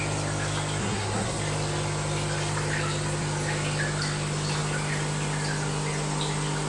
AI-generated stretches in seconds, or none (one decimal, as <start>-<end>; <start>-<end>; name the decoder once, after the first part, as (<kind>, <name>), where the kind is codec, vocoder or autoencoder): 0.8-1.4 (codec, SNAC)